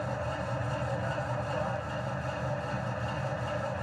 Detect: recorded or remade recorded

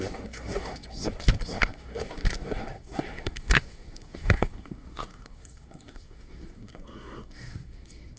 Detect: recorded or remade remade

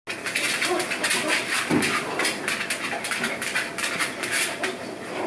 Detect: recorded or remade recorded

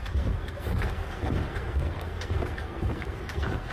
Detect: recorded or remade remade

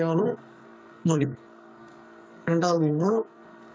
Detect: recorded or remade remade